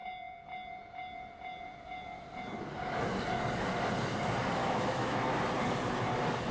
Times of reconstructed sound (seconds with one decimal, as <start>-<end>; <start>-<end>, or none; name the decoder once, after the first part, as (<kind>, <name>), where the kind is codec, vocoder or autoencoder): 4.6-5.4 (autoencoder, DAC-VAE)